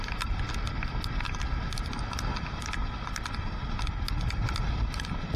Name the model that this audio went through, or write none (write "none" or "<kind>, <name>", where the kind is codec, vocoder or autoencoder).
none